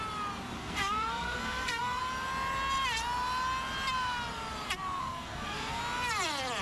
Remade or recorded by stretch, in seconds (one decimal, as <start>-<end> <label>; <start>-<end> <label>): 0.0-0.6 recorded; 0.6-2.0 remade; 2.0-5.0 recorded; 5.0-5.8 remade; 5.8-6.6 recorded